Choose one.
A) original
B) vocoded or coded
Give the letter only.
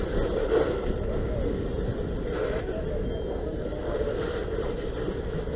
A